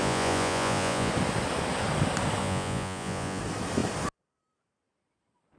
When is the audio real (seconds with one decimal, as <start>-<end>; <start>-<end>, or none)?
1.1-2.4; 3.4-5.6